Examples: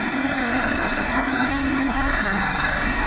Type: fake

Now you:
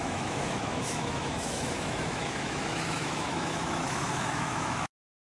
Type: fake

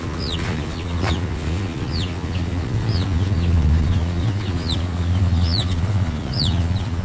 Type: fake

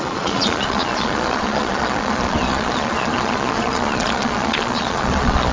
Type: fake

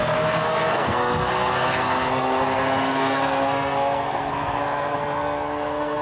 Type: fake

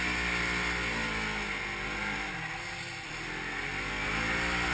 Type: real